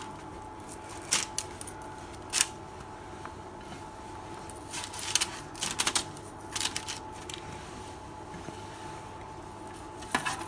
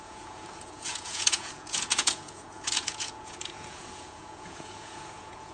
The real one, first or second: first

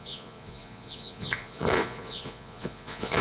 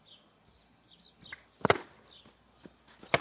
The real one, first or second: second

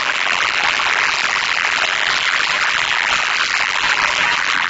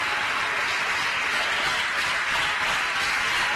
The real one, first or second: second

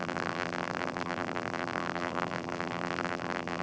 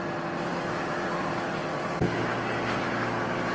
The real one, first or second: second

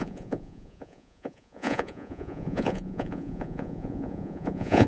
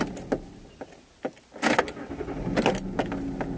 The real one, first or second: second